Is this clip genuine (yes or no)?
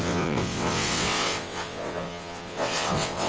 no